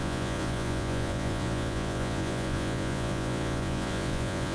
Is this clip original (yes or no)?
no